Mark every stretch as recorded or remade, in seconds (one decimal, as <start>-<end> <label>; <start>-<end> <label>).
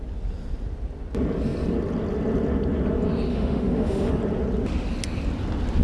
0.0-3.3 recorded; 3.3-4.1 remade; 4.1-5.8 recorded